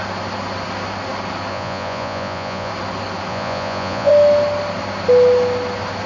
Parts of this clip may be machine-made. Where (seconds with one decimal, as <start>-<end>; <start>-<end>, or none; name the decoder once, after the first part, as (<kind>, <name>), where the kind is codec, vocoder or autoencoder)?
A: 1.5-2.7 (vocoder, Vocos); 3.3-4.1